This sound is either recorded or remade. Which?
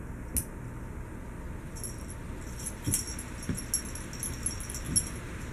recorded